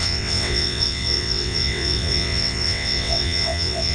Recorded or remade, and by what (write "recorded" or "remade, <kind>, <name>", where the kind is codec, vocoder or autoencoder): remade, vocoder, WaveNeXt